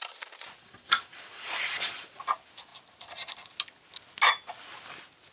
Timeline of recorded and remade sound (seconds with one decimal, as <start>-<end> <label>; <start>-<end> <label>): 0.0-0.6 recorded; 0.6-2.2 remade; 2.2-5.3 recorded

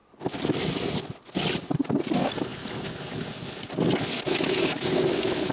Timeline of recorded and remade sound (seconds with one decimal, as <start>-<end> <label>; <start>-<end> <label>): 0.0-2.0 remade; 2.0-2.5 recorded; 2.5-3.1 remade; 3.1-5.5 recorded

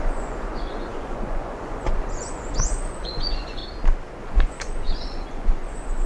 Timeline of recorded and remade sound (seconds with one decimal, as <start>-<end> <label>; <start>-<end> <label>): 0.0-3.6 remade; 3.6-4.2 recorded; 4.2-6.1 remade